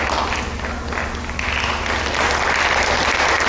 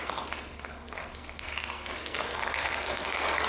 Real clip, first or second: first